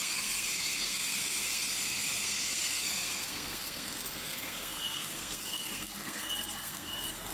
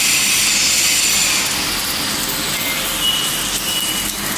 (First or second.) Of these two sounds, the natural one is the second